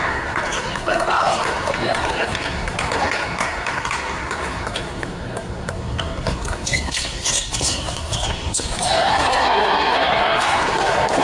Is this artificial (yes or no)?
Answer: yes